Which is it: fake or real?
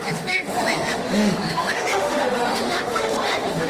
fake